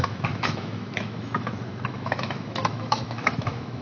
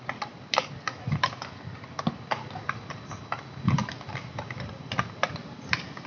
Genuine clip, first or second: second